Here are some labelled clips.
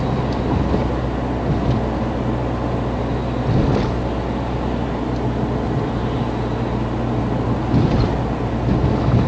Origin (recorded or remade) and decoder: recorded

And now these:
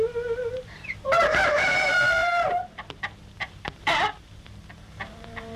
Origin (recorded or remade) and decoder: remade, vocoder, BigVGAN v2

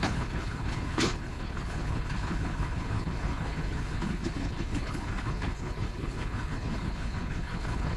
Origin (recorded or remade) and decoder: remade, codec, HILCodec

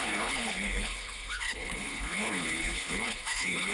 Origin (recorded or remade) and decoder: remade, codec, HILCodec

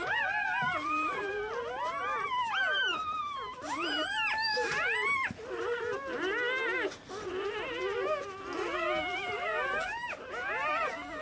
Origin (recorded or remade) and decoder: recorded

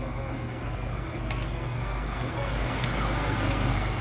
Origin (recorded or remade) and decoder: remade, codec, SNAC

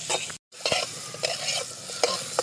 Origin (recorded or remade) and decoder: recorded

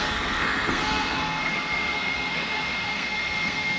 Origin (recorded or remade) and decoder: remade, codec, SNAC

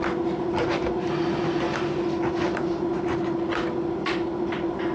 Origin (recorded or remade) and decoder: recorded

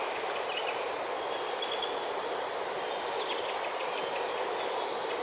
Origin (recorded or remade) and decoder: recorded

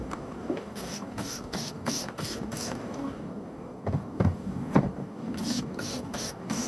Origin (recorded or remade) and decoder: remade, codec, DAC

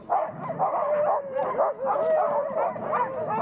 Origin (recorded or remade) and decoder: recorded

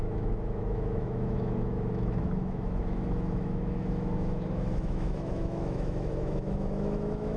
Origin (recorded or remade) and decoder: remade, autoencoder, DAC-VAE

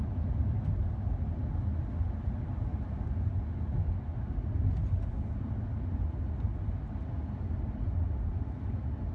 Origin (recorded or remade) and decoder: recorded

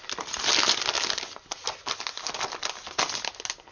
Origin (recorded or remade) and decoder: recorded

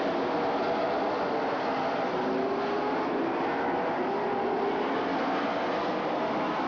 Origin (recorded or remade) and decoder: recorded